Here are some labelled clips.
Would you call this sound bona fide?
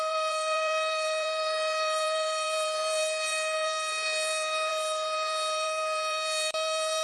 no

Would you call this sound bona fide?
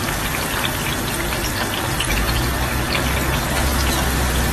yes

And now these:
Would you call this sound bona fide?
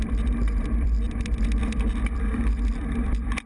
no